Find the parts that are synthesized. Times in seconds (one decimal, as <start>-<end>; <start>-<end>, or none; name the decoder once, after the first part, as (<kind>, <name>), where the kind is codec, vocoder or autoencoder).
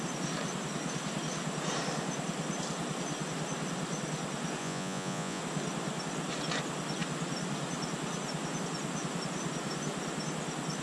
4.6-5.4 (vocoder, Vocos)